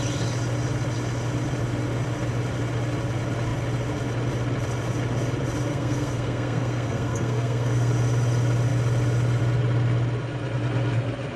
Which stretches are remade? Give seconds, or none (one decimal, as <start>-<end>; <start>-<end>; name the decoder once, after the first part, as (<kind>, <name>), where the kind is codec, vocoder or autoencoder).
5.7-7.9 (codec, SNAC)